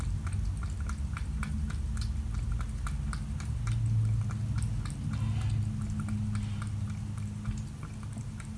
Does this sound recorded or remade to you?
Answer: recorded